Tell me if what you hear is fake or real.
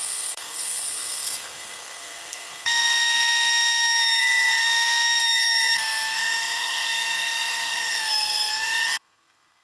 fake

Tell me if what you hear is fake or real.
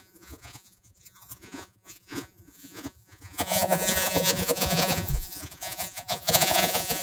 fake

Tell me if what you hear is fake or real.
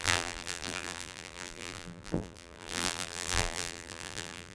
fake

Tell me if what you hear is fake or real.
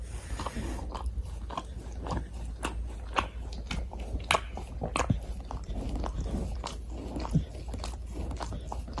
real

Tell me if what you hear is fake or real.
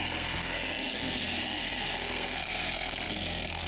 fake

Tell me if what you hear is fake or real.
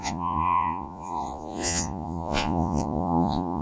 fake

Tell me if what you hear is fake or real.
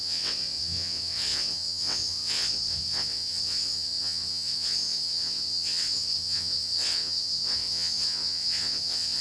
fake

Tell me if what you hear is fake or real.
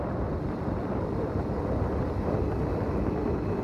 fake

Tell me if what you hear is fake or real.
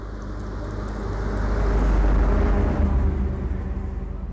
real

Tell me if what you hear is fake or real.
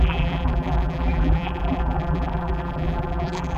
fake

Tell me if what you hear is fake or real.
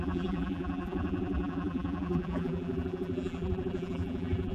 fake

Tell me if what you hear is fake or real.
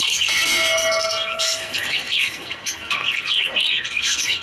fake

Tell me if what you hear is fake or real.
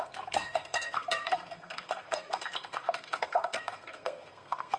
fake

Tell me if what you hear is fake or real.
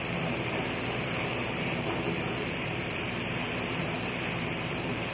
fake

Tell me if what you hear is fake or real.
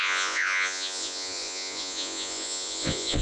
fake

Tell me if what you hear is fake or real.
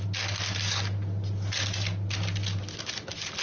real